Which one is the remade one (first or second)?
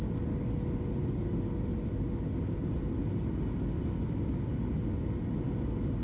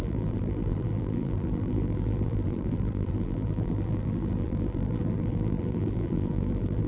second